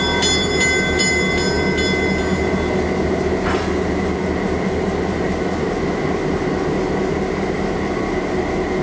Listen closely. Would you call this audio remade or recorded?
recorded